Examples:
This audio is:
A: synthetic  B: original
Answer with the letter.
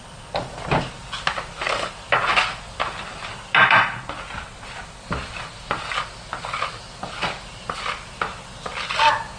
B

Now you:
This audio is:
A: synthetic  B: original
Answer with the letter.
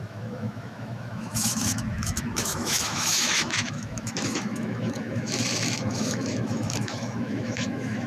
A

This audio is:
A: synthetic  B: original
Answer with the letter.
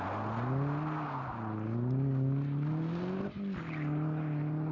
B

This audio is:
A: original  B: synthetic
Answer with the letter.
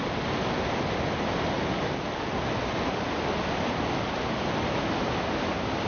A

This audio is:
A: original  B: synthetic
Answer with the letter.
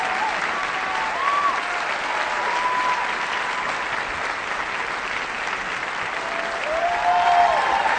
A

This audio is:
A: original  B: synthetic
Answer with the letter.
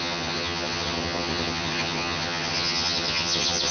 B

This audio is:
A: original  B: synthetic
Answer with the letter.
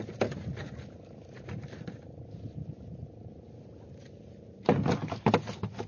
A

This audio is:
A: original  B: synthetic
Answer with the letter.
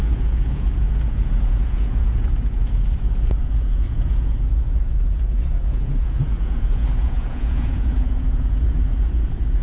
B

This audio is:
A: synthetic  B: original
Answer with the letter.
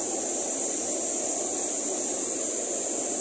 B